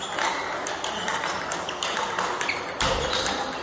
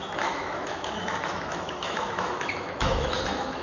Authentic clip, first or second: first